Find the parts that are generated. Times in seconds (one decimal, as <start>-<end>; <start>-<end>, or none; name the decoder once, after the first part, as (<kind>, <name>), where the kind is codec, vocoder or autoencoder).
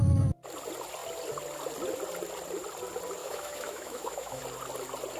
3.2-4.4 (autoencoder, DAC-VAE)